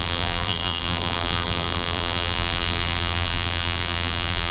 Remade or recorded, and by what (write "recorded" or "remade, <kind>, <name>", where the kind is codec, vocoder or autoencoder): remade, vocoder, BigVGAN v2